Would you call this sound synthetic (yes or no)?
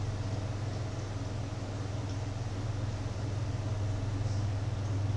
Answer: no